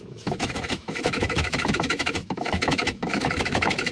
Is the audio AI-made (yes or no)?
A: yes